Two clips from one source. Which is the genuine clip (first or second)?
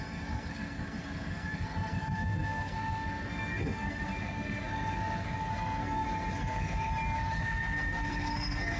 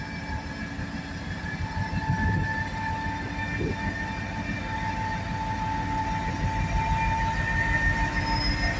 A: second